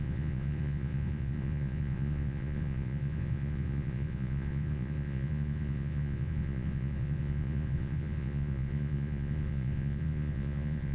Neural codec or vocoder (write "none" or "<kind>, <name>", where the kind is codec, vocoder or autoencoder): vocoder, Vocos